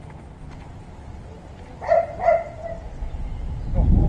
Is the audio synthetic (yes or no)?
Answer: no